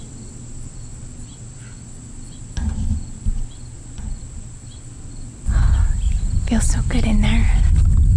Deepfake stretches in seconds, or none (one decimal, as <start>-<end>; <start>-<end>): none